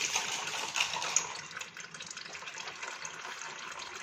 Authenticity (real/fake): real